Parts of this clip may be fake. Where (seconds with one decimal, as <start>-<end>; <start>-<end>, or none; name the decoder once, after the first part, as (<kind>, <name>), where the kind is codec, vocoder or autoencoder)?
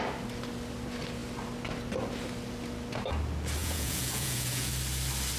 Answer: 3.6-4.7 (vocoder, Vocos)